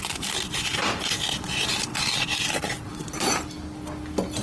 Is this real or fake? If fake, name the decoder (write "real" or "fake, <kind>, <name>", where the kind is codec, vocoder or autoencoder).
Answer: real